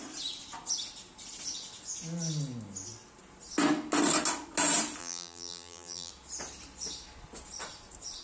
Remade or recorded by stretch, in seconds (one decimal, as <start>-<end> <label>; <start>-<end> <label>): 0.0-5.0 recorded; 5.0-6.1 remade; 6.1-8.2 recorded